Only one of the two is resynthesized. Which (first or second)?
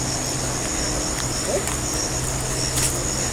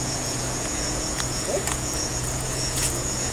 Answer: second